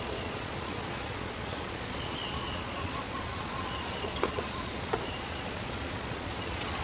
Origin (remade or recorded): remade